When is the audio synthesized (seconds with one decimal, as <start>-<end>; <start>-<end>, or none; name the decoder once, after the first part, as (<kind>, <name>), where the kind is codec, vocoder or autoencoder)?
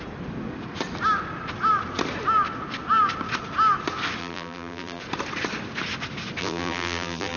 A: 4.2-5.0 (vocoder, BigVGAN v2); 6.4-7.4